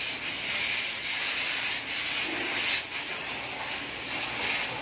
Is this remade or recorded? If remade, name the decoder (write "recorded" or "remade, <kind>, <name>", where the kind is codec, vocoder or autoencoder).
recorded